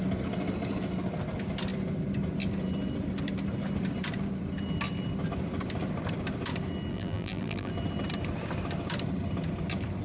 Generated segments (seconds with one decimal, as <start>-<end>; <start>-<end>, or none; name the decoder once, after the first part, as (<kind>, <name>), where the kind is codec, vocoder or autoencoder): 6.9-7.7 (vocoder, BigVGAN v2)